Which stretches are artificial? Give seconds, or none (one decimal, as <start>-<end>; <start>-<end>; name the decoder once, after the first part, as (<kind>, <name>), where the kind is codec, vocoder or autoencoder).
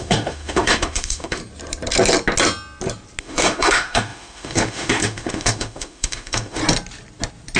0.0-1.4 (autoencoder, DAC-VAE); 3.2-6.6